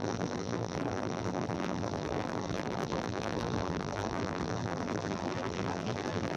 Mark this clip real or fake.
fake